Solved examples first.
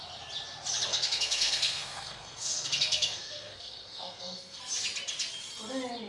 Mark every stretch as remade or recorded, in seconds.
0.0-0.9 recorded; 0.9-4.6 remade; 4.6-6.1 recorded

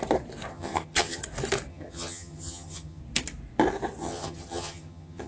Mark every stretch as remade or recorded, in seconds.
0.0-0.5 recorded; 0.5-1.2 remade; 1.2-1.7 recorded; 1.7-3.0 remade; 3.0-4.0 recorded; 4.0-5.3 remade

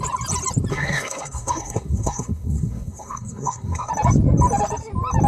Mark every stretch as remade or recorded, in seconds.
0.0-0.7 recorded; 0.7-3.9 remade; 3.9-5.3 recorded

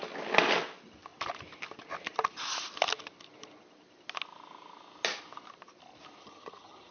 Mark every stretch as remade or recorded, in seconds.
0.0-6.2 recorded; 6.2-6.9 remade

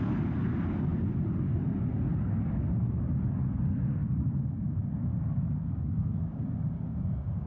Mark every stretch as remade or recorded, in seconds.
0.0-4.0 recorded; 4.0-7.5 remade

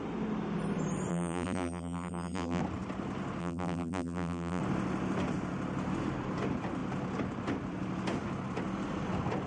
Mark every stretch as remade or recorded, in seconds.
0.0-1.1 recorded; 1.1-2.6 remade; 2.6-3.4 recorded; 3.4-4.6 remade; 4.6-9.5 recorded

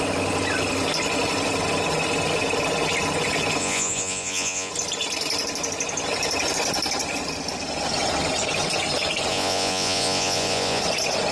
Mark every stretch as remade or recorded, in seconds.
0.0-3.6 recorded; 3.6-4.7 remade; 4.7-9.3 recorded; 9.3-10.8 remade; 10.8-11.3 recorded